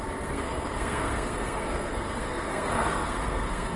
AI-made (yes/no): yes